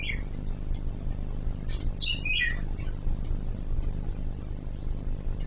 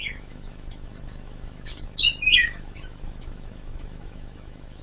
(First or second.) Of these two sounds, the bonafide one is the first